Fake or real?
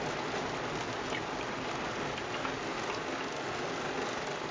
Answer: real